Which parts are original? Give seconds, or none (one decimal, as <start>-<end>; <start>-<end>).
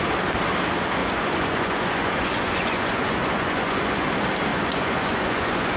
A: 0.0-1.0; 4.1-4.5